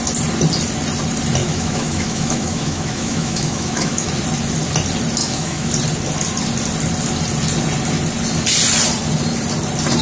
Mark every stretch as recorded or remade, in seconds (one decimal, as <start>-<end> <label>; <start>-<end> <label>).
0.0-1.4 recorded; 1.4-4.1 remade; 4.1-5.2 recorded; 5.2-5.7 remade; 5.7-10.0 recorded